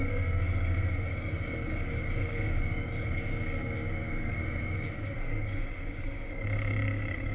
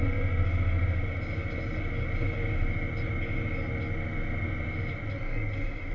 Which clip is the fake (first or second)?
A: first